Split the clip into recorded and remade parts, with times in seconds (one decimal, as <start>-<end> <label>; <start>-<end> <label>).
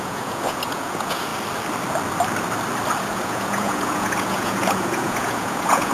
0.0-1.3 remade; 1.3-3.1 recorded; 3.1-5.9 remade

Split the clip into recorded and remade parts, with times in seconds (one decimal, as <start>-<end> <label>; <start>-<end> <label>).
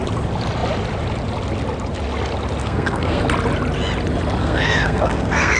0.0-2.6 recorded; 2.6-3.2 remade; 3.2-4.4 recorded; 4.4-5.6 remade